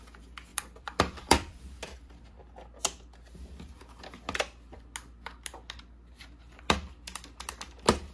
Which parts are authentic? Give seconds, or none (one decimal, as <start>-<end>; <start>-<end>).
0.0-0.5; 2.4-8.1